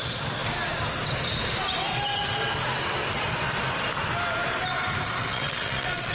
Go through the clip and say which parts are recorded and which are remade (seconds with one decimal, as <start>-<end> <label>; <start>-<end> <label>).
0.0-5.2 recorded; 5.2-6.1 remade